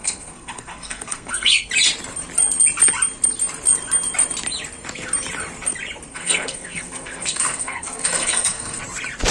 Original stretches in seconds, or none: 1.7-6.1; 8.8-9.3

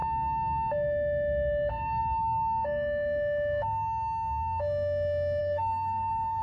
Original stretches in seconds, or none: 0.0-5.4

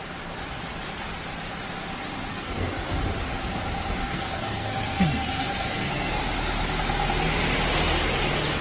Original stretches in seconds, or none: 0.0-2.3; 3.0-4.0; 6.2-8.6

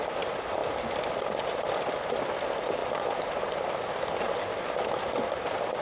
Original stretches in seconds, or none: 0.0-5.8

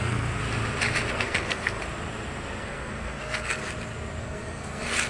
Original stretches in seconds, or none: 0.4-1.1; 1.8-2.6; 3.6-4.2

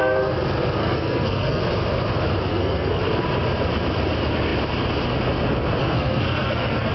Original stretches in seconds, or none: 0.0-0.8; 1.6-2.5; 3.0-5.8

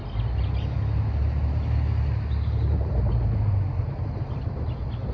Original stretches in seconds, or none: 0.0-5.1

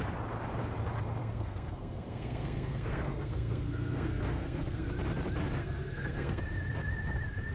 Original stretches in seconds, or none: 0.0-1.2; 4.9-5.6; 6.4-7.5